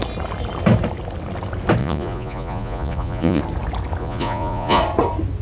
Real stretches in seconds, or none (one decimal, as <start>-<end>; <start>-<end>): 0.0-1.8; 3.4-4.0; 4.8-5.4